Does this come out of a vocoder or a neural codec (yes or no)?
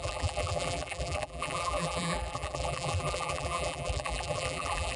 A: yes